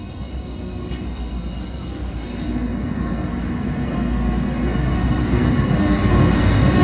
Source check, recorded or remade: remade